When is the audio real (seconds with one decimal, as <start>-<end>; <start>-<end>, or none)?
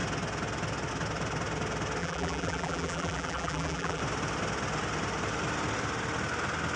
0.0-2.0; 4.0-6.8